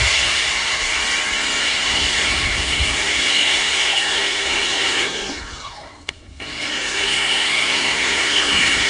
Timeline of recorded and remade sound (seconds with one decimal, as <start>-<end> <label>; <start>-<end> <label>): 0.0-1.0 remade; 1.0-1.6 recorded; 1.6-8.9 remade